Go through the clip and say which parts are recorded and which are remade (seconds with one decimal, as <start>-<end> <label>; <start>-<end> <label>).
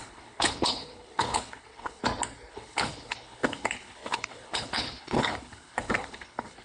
0.0-2.0 remade; 2.0-2.5 recorded; 2.5-6.6 remade